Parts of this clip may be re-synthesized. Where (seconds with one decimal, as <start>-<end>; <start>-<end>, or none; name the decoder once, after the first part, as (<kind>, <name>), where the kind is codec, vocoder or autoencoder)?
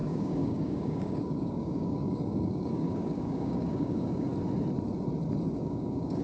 0.0-4.3 (codec, DAC); 5.4-6.2